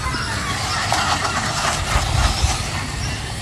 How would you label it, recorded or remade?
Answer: recorded